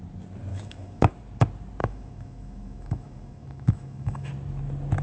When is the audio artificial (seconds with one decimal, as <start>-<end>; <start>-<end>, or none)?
0.5-1.1; 1.8-4.3